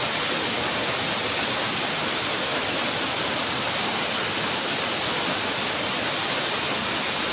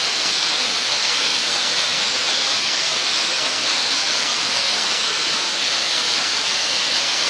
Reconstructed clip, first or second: second